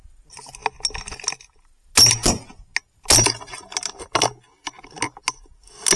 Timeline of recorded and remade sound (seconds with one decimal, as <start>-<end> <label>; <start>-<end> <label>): 0.0-6.0 recorded

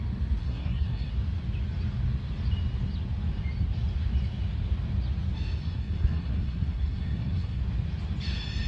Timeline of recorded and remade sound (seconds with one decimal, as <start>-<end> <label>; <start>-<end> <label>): 0.0-0.4 recorded; 0.4-1.1 remade; 1.1-5.6 recorded; 5.6-7.6 remade; 7.6-8.7 recorded

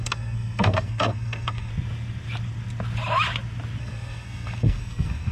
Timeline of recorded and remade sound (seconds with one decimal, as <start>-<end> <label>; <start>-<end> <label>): 0.0-1.7 remade; 1.7-3.8 recorded; 3.8-5.3 remade

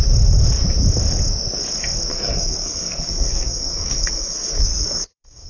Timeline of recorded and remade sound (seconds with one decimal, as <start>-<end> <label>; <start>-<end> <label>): 0.0-2.1 recorded; 2.1-5.5 remade

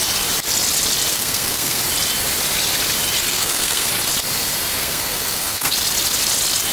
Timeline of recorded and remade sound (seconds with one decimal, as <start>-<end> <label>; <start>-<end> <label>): 0.0-1.1 recorded; 1.1-1.8 remade; 1.8-3.3 recorded; 3.3-3.9 remade; 3.9-4.8 recorded; 4.8-5.7 remade; 5.7-6.7 recorded